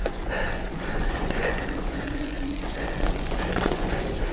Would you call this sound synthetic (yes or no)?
yes